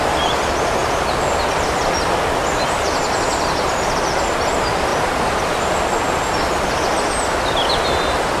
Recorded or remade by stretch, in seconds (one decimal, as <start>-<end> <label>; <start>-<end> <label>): 0.0-8.4 recorded